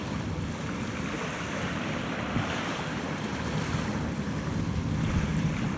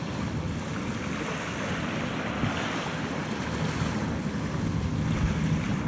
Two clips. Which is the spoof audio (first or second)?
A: first